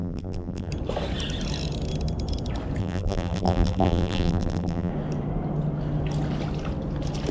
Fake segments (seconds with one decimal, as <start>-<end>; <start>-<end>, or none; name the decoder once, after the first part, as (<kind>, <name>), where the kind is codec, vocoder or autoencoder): 0.0-0.7 (vocoder, BigVGAN v2); 2.8-4.9